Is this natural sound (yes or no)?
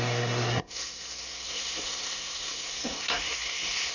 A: no